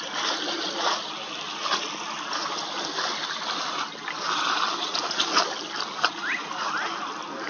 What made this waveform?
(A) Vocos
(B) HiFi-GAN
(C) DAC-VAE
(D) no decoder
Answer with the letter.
D